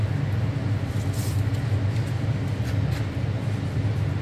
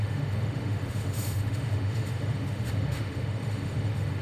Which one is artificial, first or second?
second